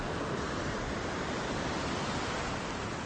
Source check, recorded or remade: remade